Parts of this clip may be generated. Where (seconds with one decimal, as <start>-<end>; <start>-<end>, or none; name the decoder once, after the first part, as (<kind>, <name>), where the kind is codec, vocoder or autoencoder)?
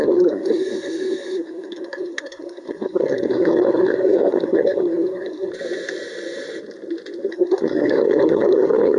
0.0-5.5 (codec, SNAC); 7.3-9.0